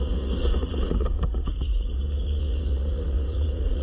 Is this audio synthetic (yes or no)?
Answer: yes